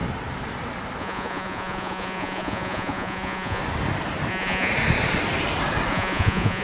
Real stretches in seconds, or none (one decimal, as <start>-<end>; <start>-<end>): 0.0-1.0; 3.6-4.3; 4.7-5.9